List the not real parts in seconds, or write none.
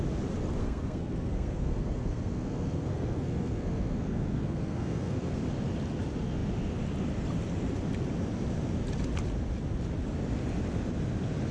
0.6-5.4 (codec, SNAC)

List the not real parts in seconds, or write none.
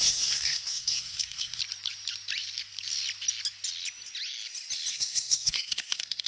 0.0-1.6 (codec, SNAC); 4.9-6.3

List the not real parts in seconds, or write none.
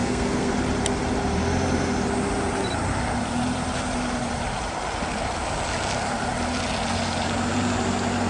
0.0-0.5 (codec, SNAC)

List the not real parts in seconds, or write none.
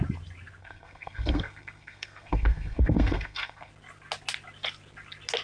0.6-3.7 (codec, SNAC)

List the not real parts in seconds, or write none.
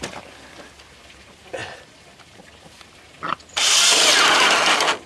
none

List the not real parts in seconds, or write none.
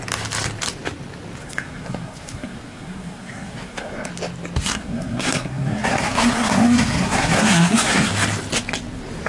1.4-4.1 (codec, SNAC); 4.6-8.1